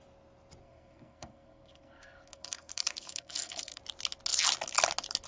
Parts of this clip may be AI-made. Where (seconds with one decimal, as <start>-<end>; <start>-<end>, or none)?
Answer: 0.6-3.8